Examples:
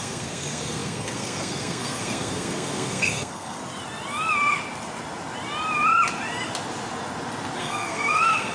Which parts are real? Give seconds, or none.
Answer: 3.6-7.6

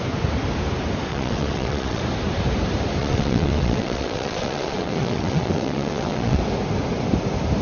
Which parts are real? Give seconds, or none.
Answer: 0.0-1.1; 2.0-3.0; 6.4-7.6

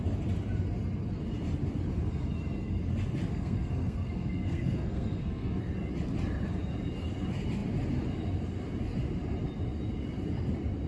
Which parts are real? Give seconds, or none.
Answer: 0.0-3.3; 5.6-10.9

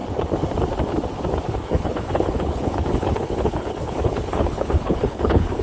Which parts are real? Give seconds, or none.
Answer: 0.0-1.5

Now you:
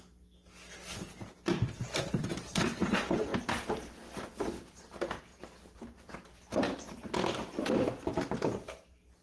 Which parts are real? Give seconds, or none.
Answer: 0.0-1.2; 2.7-3.3; 4.8-5.3; 8.0-9.2

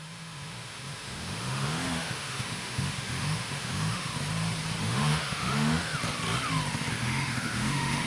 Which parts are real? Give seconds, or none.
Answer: 4.1-4.8; 5.9-6.9